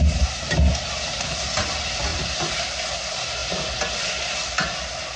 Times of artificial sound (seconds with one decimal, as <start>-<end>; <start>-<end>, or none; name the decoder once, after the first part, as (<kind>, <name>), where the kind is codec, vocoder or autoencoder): 2.1-2.8 (vocoder, BigVGAN v2); 3.4-4.0